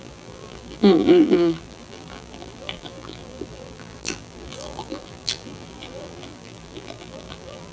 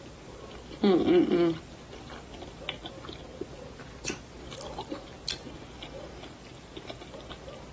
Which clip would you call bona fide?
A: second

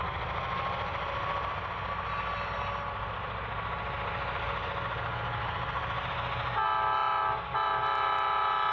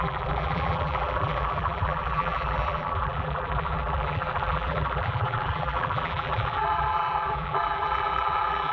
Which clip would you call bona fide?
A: first